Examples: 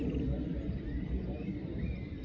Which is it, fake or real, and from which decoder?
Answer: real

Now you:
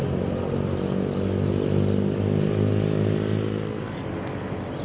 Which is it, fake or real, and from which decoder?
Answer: real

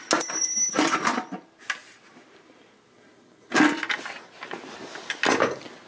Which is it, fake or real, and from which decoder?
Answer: real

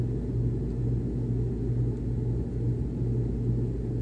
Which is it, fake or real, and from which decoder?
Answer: real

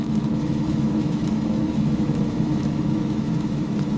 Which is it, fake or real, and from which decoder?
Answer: fake, autoencoder, DAC-VAE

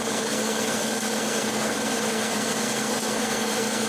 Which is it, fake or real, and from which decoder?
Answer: fake, codec, SNAC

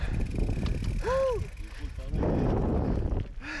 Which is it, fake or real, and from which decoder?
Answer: real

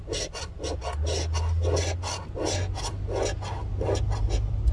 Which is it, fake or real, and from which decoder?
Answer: real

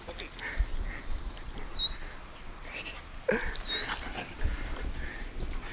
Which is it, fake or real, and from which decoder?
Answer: real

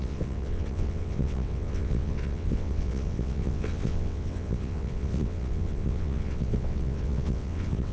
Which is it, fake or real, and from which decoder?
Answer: fake, vocoder, WaveNeXt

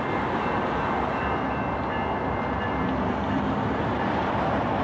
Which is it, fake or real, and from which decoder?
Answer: real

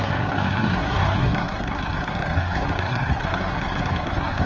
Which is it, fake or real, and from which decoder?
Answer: fake, codec, SNAC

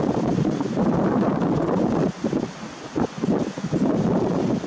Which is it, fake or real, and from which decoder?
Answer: real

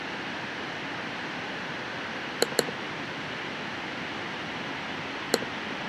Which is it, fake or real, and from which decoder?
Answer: fake, vocoder, BigVGAN v2